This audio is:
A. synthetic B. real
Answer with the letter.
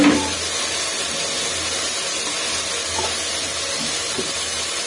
B